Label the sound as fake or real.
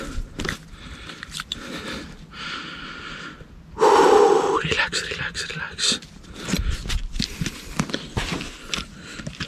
real